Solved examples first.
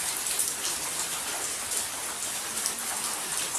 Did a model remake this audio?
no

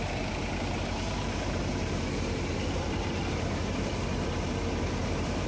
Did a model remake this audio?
yes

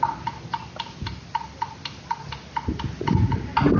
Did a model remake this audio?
no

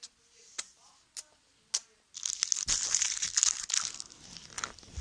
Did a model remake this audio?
no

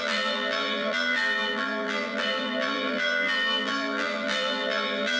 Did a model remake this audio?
yes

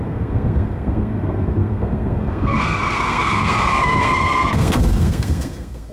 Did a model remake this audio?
yes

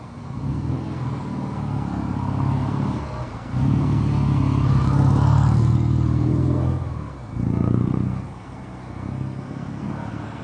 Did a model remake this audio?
yes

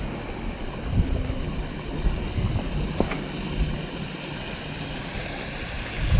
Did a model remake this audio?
no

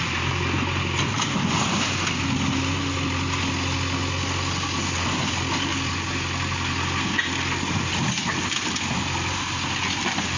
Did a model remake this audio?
no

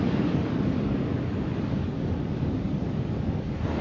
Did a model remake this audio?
yes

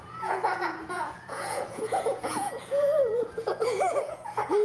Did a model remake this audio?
yes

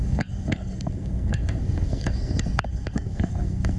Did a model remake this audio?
yes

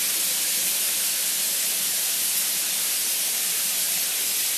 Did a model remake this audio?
no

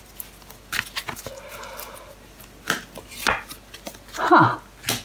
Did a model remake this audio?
no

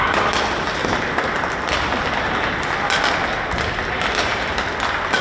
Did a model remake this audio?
no